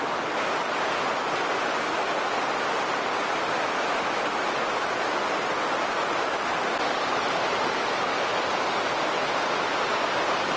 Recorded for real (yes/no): yes